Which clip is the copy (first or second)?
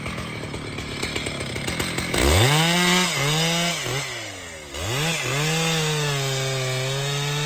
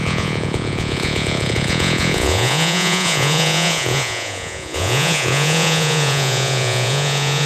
second